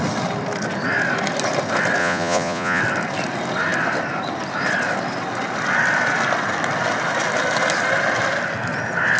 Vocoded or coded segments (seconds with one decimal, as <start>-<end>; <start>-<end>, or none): 2.0-2.8